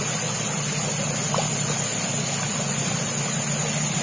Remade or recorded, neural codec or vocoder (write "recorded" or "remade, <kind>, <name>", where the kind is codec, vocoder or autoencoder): recorded